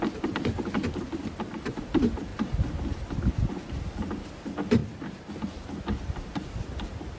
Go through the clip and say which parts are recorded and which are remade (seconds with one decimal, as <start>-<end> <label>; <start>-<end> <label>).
0.0-4.8 recorded; 4.8-5.3 remade; 5.3-7.2 recorded